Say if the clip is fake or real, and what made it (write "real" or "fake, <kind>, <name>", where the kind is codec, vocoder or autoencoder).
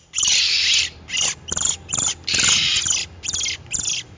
real